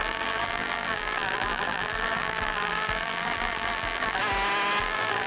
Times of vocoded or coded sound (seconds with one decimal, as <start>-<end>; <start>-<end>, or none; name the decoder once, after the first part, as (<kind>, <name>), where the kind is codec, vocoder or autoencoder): 0.0-4.2 (vocoder, BigVGAN v2); 4.8-5.3